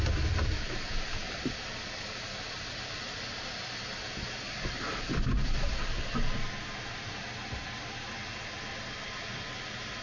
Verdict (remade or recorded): recorded